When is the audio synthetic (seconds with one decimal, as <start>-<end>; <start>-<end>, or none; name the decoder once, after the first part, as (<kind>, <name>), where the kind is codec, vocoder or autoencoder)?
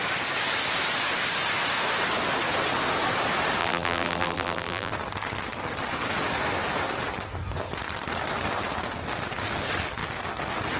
3.6-4.9 (vocoder, BigVGAN v2)